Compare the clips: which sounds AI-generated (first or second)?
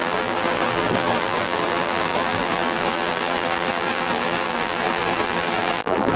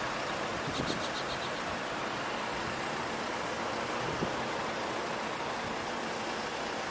first